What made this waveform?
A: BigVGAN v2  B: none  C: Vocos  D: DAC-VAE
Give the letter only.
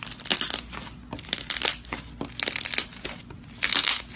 B